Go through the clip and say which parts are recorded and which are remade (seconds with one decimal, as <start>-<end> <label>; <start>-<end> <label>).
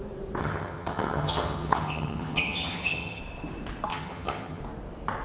0.0-0.4 recorded; 0.4-3.2 remade; 3.2-3.9 recorded; 3.9-4.6 remade; 4.6-5.2 recorded